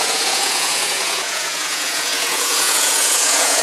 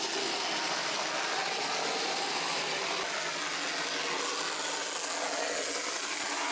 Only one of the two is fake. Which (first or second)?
first